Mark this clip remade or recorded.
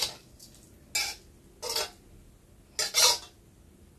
recorded